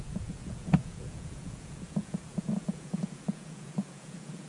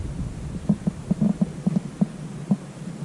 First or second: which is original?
second